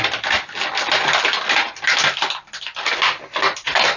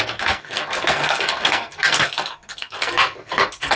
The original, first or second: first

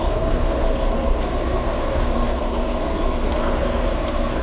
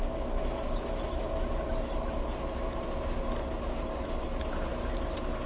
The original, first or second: second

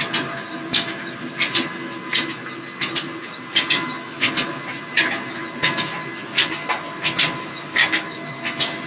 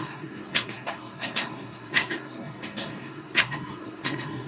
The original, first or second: first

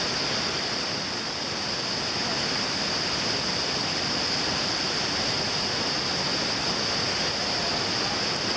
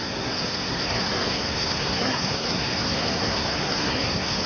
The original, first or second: first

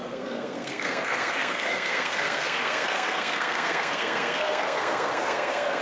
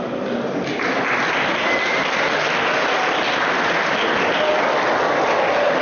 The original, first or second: second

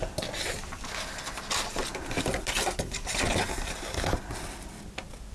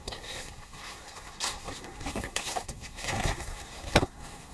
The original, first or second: first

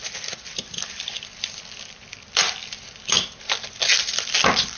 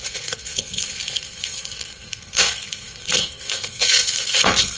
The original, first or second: first